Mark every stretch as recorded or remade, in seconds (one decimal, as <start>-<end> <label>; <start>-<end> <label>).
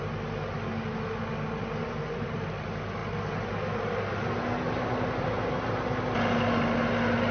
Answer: 0.0-7.3 recorded